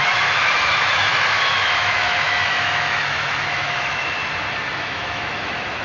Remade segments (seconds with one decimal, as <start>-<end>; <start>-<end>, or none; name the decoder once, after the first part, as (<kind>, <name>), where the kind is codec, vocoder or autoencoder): 0.0-4.2 (autoencoder, DAC-VAE); 4.7-5.8